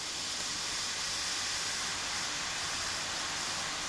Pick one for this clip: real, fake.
real